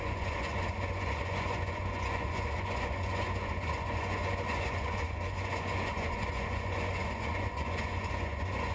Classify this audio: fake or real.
fake